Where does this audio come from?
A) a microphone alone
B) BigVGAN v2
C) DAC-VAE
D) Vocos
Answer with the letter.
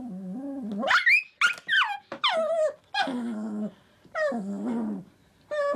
A